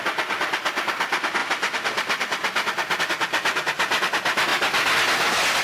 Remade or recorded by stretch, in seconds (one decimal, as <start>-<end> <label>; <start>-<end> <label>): 0.0-5.6 recorded